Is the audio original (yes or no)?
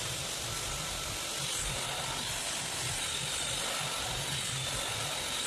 yes